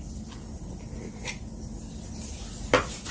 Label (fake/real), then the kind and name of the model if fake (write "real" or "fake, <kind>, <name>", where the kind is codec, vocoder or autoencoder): real